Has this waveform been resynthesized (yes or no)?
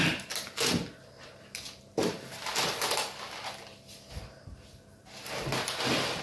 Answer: no